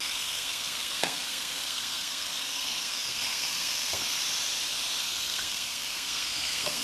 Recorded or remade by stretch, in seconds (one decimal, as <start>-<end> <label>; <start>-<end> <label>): 0.0-4.2 remade; 4.2-5.0 recorded; 5.0-6.8 remade